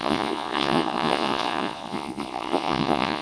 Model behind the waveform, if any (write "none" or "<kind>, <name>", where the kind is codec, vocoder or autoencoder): vocoder, Vocos